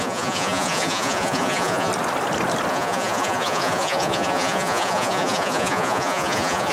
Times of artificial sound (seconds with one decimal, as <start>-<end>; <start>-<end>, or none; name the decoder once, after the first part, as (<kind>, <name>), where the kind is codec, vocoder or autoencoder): 0.0-1.9 (vocoder, Vocos); 2.7-6.7